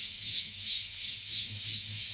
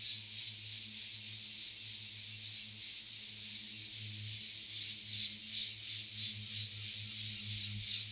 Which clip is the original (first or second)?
second